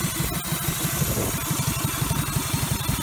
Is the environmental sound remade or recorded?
recorded